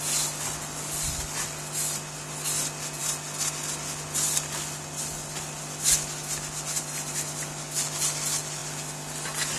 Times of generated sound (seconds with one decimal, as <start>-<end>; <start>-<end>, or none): none